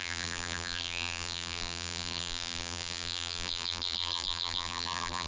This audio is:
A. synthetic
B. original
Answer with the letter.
A